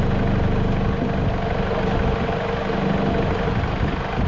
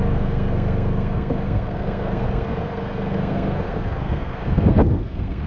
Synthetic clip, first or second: second